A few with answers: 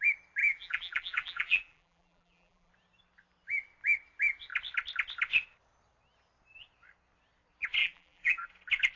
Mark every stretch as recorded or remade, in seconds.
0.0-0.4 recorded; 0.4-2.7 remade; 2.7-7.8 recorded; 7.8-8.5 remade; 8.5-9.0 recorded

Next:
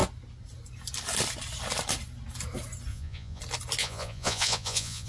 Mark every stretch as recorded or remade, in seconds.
0.0-2.9 recorded; 2.9-3.4 remade; 3.4-3.8 recorded; 3.8-5.1 remade

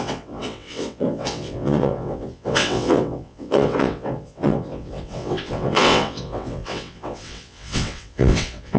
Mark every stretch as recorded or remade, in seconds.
0.0-8.8 remade

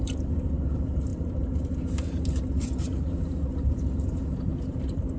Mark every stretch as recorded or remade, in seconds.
0.0-5.2 remade